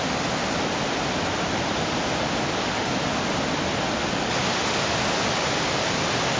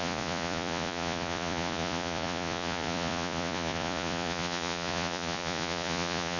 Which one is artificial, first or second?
second